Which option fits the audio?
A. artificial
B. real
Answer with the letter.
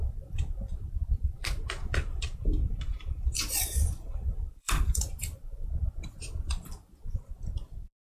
A